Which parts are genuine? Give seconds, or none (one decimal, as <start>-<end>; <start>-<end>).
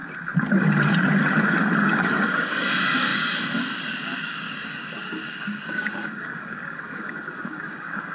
0.0-1.6